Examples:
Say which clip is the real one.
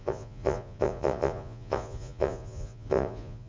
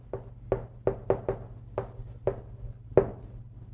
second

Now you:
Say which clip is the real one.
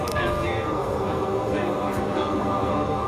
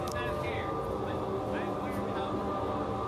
second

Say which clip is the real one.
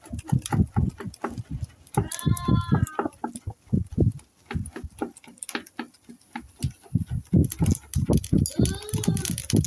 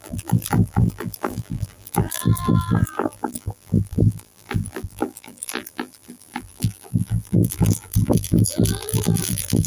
first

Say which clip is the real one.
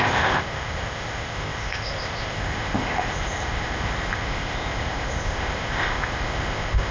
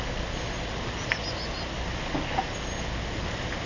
second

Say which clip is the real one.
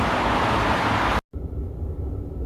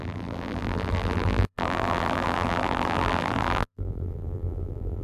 first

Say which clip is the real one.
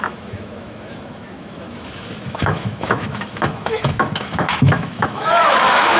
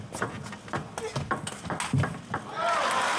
second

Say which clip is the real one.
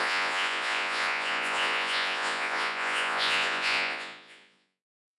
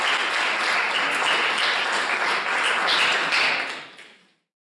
second